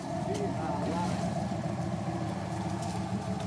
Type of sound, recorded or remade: remade